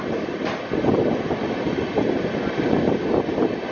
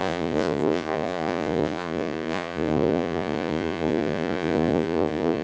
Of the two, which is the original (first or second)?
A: first